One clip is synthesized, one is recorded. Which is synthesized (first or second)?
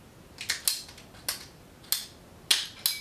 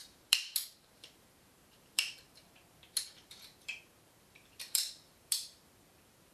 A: second